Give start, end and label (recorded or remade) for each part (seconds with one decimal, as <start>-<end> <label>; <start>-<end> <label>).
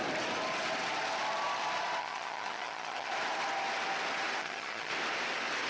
0.0-2.0 recorded; 2.0-3.1 remade; 3.1-4.4 recorded; 4.4-4.9 remade; 4.9-5.7 recorded